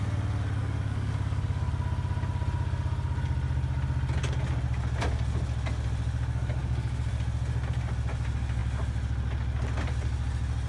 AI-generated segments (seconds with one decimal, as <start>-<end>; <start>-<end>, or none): 0.6-1.7; 6.6-7.1